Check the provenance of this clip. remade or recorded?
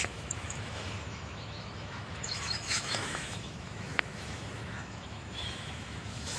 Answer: remade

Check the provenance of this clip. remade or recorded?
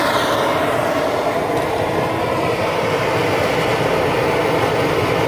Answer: recorded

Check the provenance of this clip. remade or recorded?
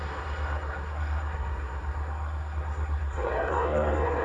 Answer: remade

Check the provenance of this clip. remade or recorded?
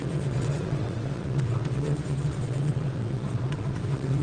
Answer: remade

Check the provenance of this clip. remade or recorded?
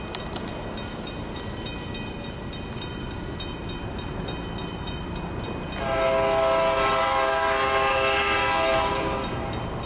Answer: recorded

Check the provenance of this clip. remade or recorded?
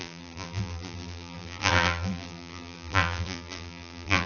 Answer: remade